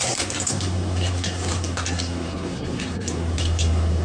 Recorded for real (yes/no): no